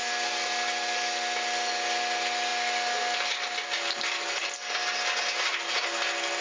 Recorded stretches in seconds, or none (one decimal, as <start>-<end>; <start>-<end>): 0.0-6.4